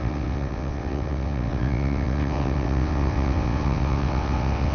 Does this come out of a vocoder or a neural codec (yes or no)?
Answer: yes